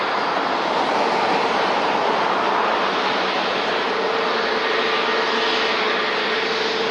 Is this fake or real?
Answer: real